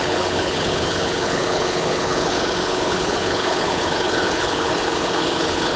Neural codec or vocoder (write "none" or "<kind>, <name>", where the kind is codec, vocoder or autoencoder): codec, HILCodec